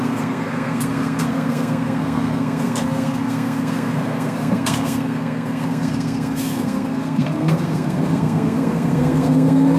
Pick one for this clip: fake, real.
fake